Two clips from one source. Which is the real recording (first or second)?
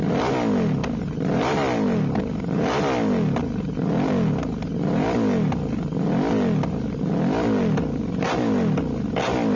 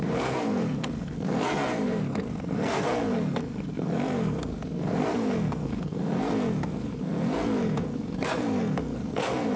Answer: first